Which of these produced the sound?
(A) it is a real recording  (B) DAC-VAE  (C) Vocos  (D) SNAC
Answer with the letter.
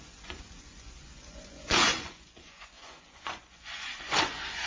C